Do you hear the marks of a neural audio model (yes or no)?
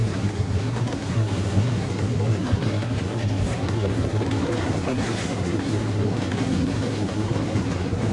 yes